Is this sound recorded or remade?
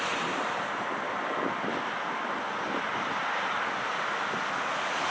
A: recorded